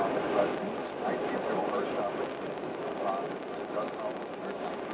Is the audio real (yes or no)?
yes